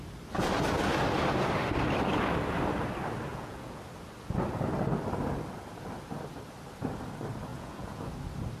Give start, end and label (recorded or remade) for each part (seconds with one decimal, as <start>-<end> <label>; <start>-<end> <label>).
0.0-3.3 recorded; 3.3-3.8 remade; 3.8-7.5 recorded; 7.5-8.1 remade; 8.1-8.6 recorded